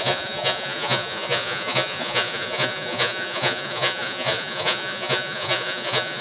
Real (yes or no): no